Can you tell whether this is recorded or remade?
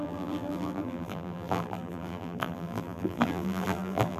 remade